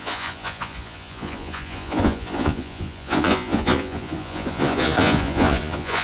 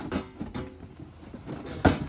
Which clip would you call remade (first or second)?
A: first